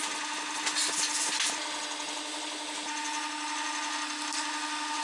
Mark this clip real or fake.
real